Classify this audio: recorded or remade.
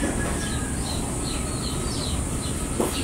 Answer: recorded